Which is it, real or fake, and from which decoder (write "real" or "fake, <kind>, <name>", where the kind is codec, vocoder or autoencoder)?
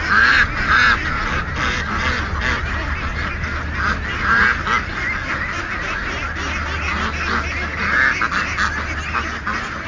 real